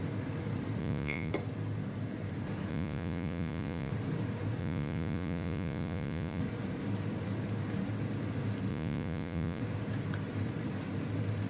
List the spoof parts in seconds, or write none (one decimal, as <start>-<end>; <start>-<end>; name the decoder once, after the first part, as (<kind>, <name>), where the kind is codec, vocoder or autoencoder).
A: 0.8-1.3 (vocoder, Vocos); 2.7-3.9; 4.6-6.4; 8.7-9.6